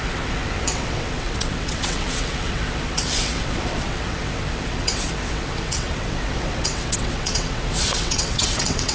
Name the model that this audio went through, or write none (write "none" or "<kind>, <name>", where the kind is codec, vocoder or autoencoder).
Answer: vocoder, WaveNeXt